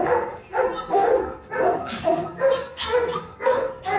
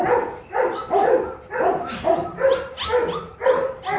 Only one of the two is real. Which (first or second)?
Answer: second